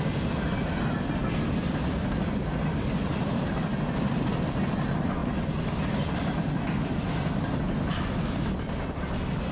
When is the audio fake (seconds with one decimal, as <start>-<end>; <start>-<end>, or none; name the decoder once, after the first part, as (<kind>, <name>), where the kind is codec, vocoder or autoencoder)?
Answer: none